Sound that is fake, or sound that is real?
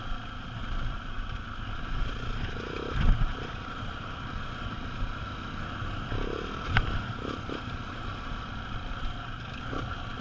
real